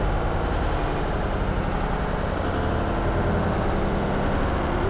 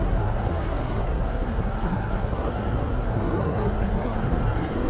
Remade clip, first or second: second